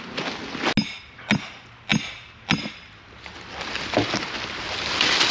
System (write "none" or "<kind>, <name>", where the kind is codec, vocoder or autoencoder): none